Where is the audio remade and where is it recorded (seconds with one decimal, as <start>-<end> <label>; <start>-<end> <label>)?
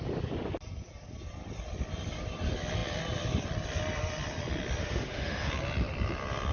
0.0-4.8 recorded; 4.8-5.5 remade; 5.5-6.5 recorded